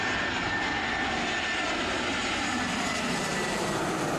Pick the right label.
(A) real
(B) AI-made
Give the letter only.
A